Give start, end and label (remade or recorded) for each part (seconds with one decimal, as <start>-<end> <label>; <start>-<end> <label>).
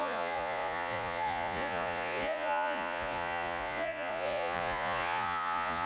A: 0.0-5.9 remade